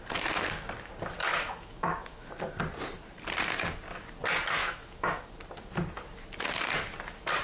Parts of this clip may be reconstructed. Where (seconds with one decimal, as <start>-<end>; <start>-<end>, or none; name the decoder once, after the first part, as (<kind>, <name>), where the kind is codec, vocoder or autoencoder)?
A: 1.2-2.3 (autoencoder, DAC-VAE); 4.6-5.2